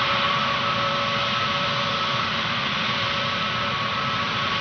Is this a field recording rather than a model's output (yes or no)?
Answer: no